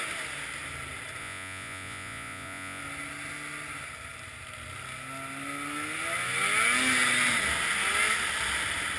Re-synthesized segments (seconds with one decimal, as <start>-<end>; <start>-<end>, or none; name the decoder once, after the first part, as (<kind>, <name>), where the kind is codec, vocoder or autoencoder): 1.2-2.8 (vocoder, Vocos)